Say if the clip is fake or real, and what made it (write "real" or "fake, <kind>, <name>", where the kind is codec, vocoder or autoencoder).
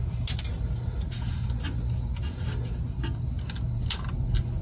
real